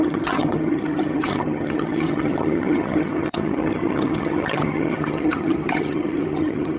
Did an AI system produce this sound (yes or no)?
yes